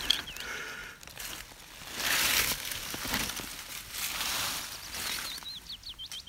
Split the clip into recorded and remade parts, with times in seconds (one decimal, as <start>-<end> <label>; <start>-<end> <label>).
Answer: 0.0-6.3 recorded

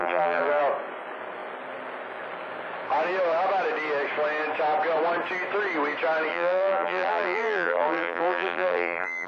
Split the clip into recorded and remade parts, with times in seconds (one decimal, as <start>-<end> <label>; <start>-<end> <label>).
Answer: 0.0-0.6 remade; 0.6-6.3 recorded; 6.3-9.3 remade

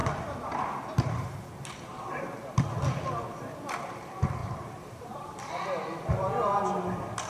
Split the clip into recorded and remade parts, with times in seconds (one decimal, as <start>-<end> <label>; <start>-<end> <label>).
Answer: 0.0-2.2 remade; 2.2-4.4 recorded; 4.4-5.3 remade; 5.3-7.3 recorded

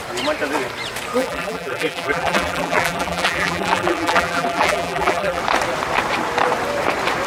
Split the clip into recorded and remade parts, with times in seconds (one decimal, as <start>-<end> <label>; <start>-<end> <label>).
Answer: 0.0-1.2 recorded; 1.2-5.4 remade; 5.4-7.3 recorded

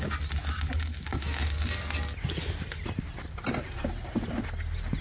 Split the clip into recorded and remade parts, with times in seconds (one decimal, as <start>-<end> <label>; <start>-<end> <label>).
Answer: 0.0-5.0 recorded